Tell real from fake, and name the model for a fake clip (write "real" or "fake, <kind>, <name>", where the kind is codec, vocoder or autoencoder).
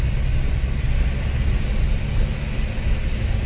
real